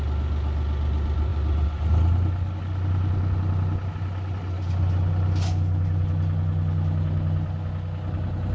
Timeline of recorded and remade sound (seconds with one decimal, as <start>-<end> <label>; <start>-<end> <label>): 0.0-8.5 recorded

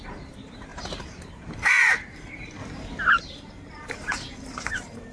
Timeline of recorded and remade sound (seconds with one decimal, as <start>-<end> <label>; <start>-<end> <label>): 0.0-2.6 remade; 2.6-3.1 recorded; 3.1-5.1 remade

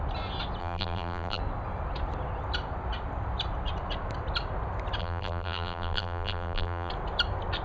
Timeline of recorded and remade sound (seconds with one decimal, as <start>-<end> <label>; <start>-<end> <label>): 0.0-0.6 recorded; 0.6-1.4 remade; 1.4-5.0 recorded; 5.0-6.9 remade; 6.9-7.6 recorded

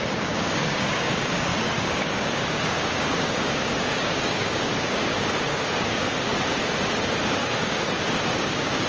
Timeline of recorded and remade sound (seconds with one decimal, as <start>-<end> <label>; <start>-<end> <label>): 0.0-6.3 remade; 6.3-7.3 recorded; 7.3-8.9 remade